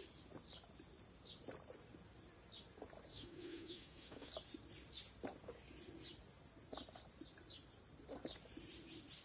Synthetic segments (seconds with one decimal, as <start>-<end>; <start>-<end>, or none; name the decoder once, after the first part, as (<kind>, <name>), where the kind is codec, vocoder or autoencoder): 3.1-4.3 (autoencoder, DAC-VAE)